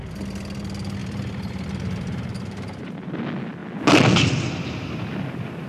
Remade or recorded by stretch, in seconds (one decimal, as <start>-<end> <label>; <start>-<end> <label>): 0.0-1.0 recorded; 1.0-3.2 remade; 3.2-5.7 recorded